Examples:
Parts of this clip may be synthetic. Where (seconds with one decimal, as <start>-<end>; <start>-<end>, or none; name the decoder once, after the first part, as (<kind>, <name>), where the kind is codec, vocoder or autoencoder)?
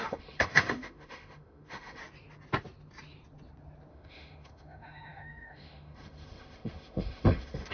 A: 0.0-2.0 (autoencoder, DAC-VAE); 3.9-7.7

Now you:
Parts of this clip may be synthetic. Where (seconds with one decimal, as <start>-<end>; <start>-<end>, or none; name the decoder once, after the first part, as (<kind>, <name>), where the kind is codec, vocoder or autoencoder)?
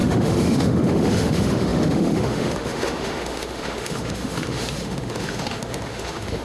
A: 0.0-6.4 (autoencoder, DAC-VAE)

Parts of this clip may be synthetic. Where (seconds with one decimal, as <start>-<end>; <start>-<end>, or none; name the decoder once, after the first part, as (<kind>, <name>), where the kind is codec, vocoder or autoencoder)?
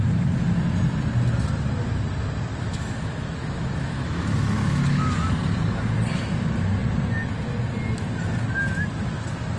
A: 2.5-5.1 (autoencoder, DAC-VAE)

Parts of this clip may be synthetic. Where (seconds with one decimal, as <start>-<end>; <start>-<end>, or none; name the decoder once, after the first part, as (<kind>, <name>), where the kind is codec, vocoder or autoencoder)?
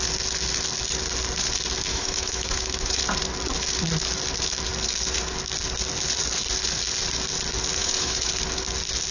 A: 1.9-3.0 (autoencoder, DAC-VAE); 7.8-8.3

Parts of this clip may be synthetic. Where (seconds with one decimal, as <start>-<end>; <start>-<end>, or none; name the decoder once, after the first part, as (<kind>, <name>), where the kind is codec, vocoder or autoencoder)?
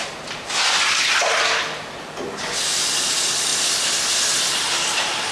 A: none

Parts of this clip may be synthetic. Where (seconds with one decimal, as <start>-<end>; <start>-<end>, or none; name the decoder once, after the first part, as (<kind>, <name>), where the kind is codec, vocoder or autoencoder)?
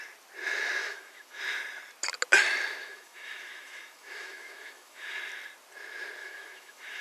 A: 0.8-1.4 (autoencoder, DAC-VAE); 2.8-5.2; 6.2-7.0